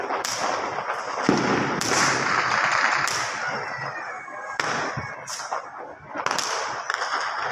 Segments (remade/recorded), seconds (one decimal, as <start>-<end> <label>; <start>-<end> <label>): 0.0-0.4 recorded; 0.4-4.9 remade; 4.9-7.5 recorded